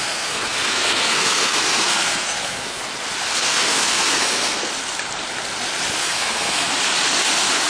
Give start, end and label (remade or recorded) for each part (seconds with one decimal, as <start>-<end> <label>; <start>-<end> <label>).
0.0-2.8 remade; 2.8-3.3 recorded; 3.3-4.7 remade; 4.7-6.0 recorded; 6.0-6.7 remade; 6.7-7.7 recorded